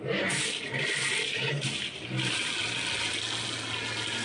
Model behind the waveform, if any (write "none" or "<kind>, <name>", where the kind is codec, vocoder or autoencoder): none